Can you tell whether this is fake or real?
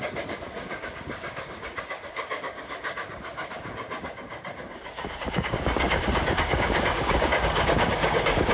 fake